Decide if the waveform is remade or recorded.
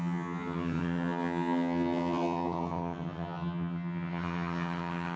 remade